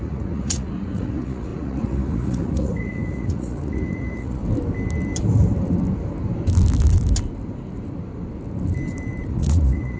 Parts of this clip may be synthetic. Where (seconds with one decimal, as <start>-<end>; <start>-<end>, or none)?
0.0-4.4; 9.3-10.0